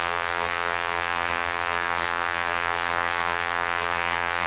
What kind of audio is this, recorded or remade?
remade